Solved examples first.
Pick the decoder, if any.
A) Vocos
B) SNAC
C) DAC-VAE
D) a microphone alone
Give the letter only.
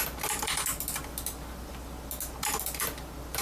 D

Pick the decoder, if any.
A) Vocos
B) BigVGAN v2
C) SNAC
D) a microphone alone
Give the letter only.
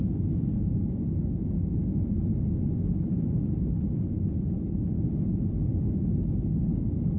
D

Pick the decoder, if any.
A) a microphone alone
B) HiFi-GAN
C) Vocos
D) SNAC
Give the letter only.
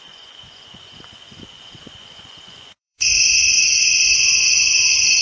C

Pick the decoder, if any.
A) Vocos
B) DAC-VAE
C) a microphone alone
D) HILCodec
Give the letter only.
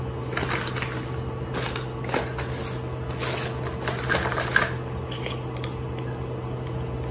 C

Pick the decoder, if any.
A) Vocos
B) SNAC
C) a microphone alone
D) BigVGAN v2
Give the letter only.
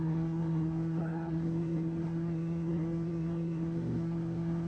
B